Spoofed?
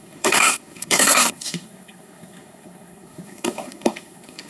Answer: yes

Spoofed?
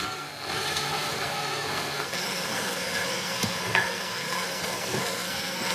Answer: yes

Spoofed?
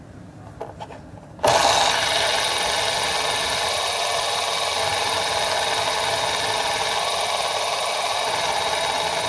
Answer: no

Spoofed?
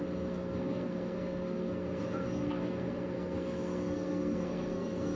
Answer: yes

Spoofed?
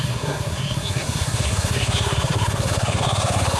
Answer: yes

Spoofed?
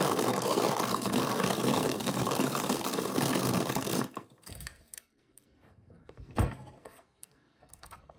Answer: yes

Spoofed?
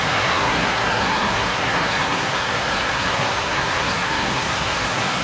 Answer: yes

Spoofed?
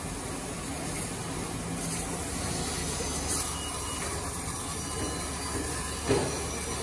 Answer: no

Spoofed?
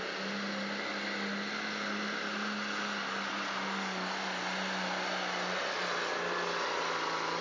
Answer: no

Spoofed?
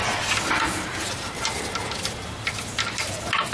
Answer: no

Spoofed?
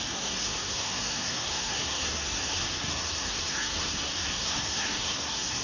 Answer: yes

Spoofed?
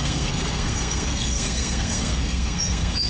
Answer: yes